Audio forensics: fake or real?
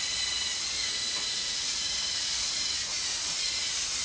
fake